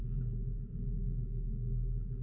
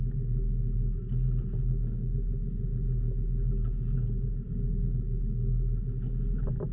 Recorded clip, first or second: second